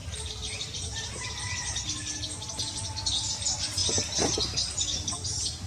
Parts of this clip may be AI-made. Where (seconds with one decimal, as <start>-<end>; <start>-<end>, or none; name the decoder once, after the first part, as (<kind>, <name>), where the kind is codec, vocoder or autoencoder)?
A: 3.8-4.7 (vocoder, BigVGAN v2)